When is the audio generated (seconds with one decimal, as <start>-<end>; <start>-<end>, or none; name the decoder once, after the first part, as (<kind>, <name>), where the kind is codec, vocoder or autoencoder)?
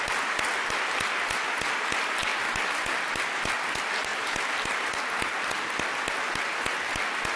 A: none